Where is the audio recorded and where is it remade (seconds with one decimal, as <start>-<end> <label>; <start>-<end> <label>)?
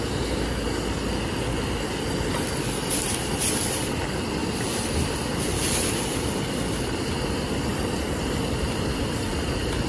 0.0-4.4 recorded; 4.4-5.1 remade; 5.1-9.9 recorded